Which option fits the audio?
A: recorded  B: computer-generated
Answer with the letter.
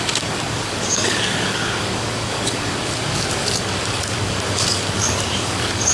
B